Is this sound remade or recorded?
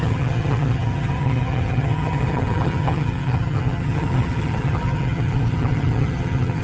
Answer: remade